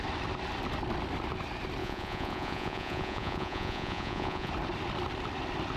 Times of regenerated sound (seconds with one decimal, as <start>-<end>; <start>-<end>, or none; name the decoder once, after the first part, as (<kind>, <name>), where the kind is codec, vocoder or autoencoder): 1.8-4.5 (vocoder, Vocos)